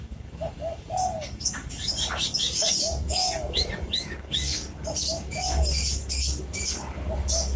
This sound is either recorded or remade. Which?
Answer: remade